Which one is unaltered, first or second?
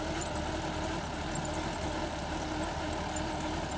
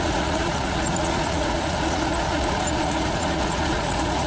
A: first